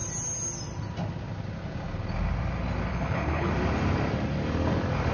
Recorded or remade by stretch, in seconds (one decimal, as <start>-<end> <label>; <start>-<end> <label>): 0.0-2.9 recorded; 2.9-3.5 remade; 3.5-5.1 recorded